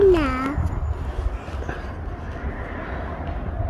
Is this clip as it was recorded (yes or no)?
yes